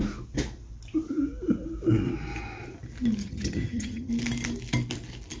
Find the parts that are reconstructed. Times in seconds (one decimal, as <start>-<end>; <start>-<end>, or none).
3.2-4.1